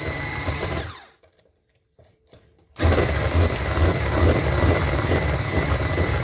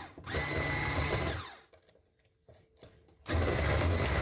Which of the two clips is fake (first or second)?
first